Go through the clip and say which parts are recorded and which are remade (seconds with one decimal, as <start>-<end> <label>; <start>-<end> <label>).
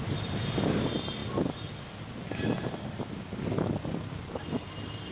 0.0-5.1 recorded